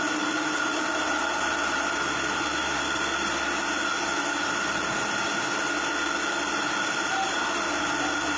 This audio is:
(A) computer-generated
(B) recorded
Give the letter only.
A